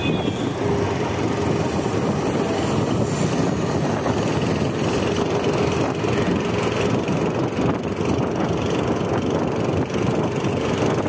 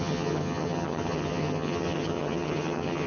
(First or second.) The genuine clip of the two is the first